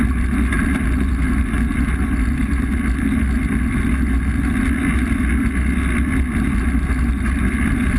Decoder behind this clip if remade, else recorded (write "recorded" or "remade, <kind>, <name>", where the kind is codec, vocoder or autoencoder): recorded